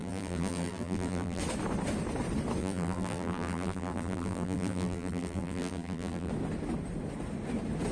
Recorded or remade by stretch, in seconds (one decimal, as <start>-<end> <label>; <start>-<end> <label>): 0.0-1.4 remade; 1.4-2.6 recorded; 2.6-6.3 remade; 6.3-7.9 recorded